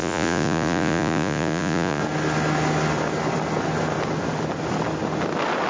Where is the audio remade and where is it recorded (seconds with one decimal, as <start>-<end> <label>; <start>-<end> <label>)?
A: 0.0-2.0 remade; 2.0-5.7 recorded